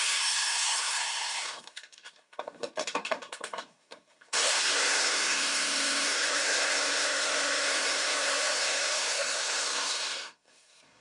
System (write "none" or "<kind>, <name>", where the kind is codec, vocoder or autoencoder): codec, SNAC